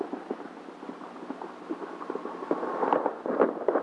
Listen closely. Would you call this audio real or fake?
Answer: real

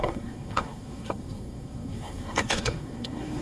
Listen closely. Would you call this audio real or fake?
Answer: fake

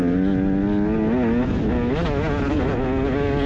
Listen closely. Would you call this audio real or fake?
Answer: real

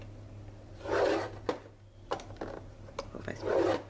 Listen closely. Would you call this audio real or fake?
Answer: real